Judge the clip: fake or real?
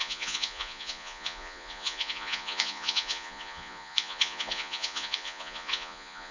fake